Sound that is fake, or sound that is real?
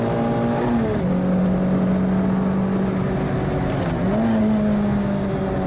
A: real